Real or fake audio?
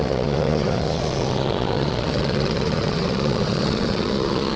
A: fake